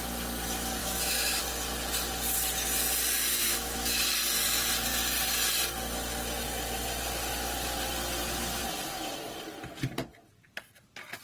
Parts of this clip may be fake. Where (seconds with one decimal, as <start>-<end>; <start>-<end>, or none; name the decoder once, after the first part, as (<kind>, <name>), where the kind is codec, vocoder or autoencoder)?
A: 0.8-1.4 (autoencoder, DAC-VAE); 3.3-4.0